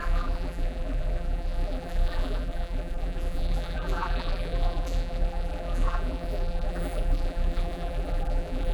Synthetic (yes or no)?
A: yes